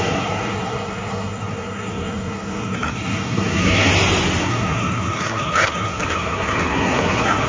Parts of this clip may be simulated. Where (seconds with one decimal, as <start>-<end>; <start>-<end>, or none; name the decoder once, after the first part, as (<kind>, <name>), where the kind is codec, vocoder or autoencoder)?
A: 0.0-3.9 (codec, SNAC); 4.4-7.5